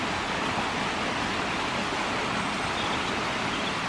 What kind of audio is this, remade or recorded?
recorded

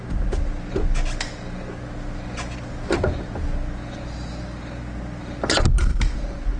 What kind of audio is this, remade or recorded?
recorded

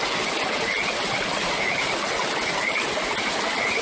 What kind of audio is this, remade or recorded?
recorded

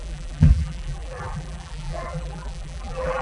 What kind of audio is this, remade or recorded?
remade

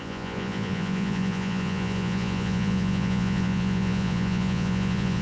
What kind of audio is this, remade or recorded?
remade